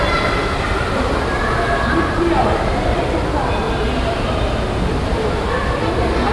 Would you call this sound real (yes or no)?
yes